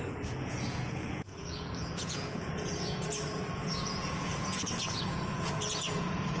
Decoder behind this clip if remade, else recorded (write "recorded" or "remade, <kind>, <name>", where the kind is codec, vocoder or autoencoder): remade, vocoder, Vocos